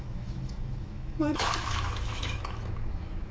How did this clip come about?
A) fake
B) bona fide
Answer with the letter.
A